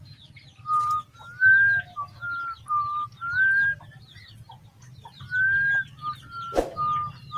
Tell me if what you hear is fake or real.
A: real